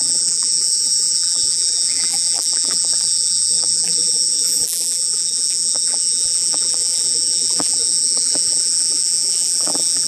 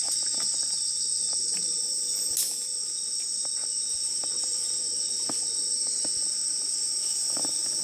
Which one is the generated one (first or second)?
first